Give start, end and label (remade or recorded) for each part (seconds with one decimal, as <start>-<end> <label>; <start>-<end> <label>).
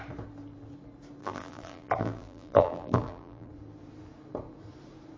0.0-1.2 recorded; 1.2-3.5 remade; 3.5-5.2 recorded